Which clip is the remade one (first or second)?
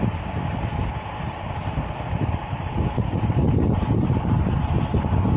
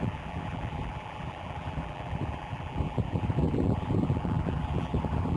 second